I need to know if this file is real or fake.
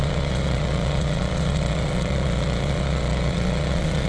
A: fake